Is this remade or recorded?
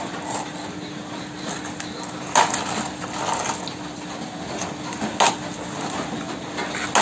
recorded